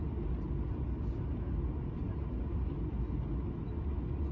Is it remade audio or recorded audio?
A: recorded